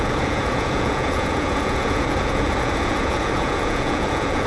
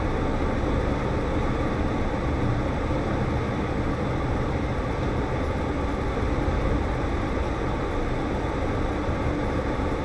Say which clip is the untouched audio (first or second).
second